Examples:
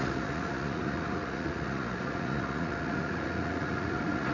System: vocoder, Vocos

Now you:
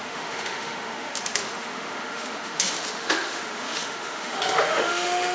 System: autoencoder, DAC-VAE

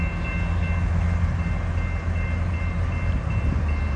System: none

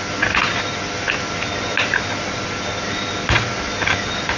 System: none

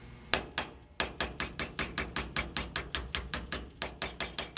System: none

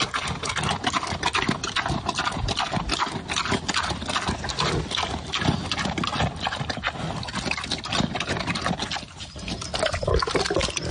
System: none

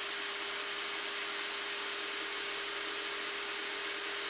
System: none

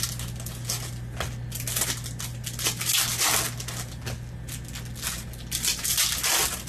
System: none